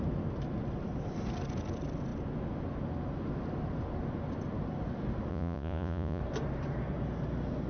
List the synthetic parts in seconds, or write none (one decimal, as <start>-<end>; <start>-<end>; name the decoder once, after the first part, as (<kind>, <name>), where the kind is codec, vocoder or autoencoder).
5.3-6.2 (vocoder, Vocos)